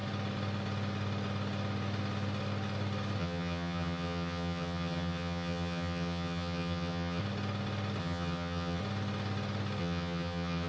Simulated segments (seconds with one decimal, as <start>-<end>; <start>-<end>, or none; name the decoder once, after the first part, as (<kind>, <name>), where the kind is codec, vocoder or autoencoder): 3.2-7.2 (vocoder, HiFi-GAN); 8.0-8.8; 9.8-10.7